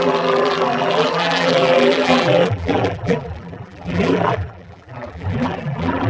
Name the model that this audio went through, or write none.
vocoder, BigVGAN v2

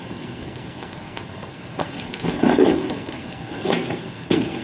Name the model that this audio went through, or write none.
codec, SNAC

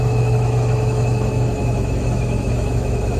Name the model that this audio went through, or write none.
autoencoder, DAC-VAE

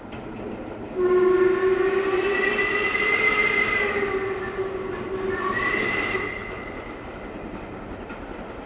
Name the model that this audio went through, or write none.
none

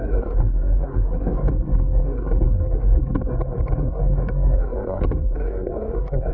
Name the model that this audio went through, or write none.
codec, SNAC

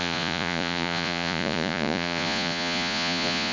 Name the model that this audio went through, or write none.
vocoder, Vocos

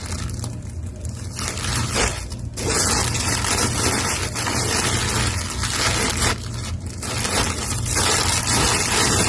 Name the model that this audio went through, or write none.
none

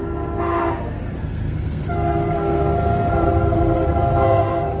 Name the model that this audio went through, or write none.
codec, SNAC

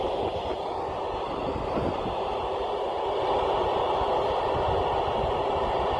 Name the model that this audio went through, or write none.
none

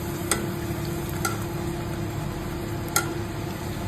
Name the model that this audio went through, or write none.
none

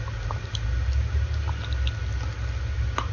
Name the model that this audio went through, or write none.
none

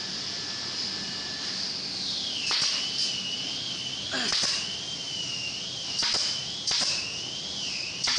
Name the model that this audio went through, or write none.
none